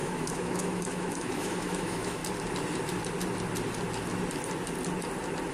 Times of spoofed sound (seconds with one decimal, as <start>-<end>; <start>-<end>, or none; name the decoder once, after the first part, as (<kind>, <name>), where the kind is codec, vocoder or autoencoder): 0.0-2.2 (autoencoder, DAC-VAE)